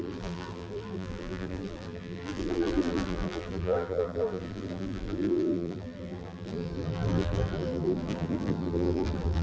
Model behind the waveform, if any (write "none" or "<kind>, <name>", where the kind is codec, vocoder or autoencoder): vocoder, BigVGAN v2